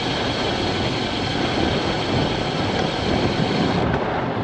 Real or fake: fake